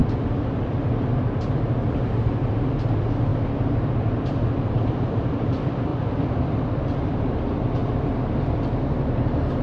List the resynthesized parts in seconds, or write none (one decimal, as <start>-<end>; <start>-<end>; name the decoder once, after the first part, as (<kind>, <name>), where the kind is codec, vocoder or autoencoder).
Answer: 0.0-7.8 (vocoder, BigVGAN v2)